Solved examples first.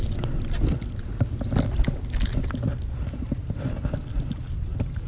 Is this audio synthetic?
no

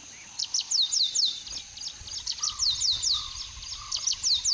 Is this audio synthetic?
no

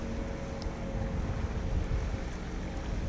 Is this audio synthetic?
no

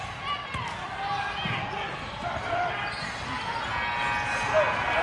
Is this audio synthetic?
no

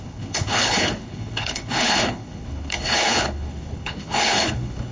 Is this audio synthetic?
yes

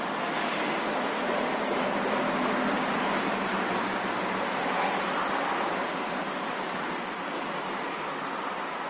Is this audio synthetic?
no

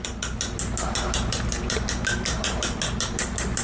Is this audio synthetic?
no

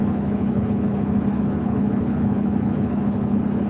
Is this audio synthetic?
yes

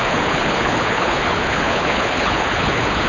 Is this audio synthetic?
yes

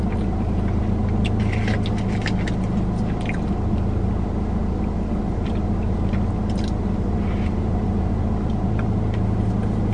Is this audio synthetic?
no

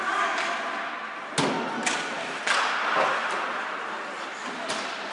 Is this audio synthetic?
no